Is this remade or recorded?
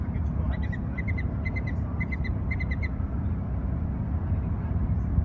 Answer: recorded